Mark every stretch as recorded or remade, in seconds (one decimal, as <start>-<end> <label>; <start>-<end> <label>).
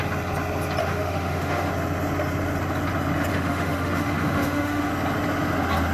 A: 0.0-0.8 recorded; 0.8-1.7 remade; 1.7-3.3 recorded; 3.3-4.9 remade; 4.9-5.9 recorded